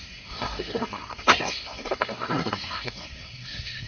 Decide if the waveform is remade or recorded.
remade